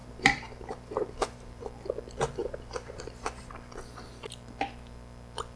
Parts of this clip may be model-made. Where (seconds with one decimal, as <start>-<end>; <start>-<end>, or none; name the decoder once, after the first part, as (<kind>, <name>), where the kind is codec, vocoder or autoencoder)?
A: 0.0-1.6 (vocoder, BigVGAN v2); 2.4-3.5